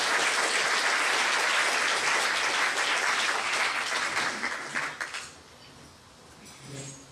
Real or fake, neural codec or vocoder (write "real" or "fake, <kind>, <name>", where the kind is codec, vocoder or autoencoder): real